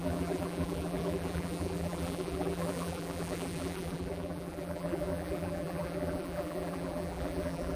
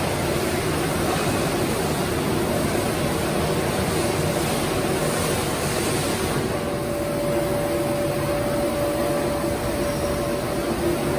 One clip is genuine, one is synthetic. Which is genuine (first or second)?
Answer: second